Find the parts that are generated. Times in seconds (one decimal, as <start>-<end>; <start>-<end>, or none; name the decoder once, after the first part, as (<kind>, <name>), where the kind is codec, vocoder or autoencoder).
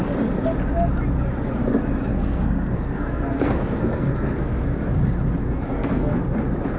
2.1-4.8 (codec, SNAC); 5.4-6.2